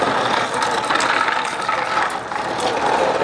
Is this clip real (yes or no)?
yes